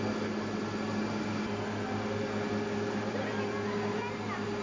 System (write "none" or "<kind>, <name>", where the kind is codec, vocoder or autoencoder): none